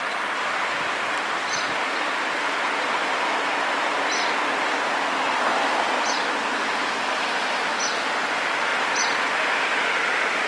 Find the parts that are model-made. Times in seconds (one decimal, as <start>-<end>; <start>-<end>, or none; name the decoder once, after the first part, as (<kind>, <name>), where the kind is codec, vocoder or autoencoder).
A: none